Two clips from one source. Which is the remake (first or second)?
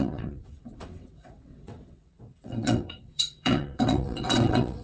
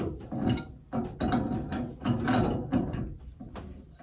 first